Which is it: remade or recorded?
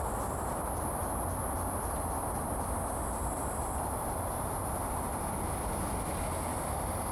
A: recorded